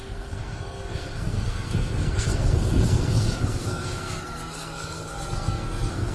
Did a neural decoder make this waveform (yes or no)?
yes